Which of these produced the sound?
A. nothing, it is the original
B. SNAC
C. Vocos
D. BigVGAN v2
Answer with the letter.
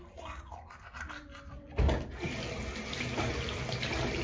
A